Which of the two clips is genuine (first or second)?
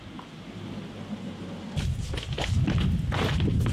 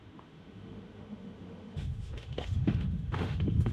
first